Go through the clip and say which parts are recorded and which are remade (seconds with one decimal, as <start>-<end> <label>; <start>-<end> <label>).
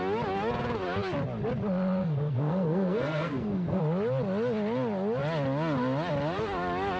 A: 0.0-2.0 recorded; 2.0-3.8 remade; 3.8-7.0 recorded